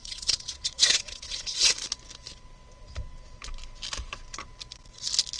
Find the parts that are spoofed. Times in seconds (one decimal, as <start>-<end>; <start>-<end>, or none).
0.0-1.7

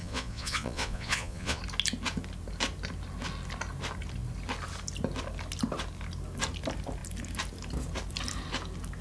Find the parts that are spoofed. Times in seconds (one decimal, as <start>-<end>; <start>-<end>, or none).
0.0-1.6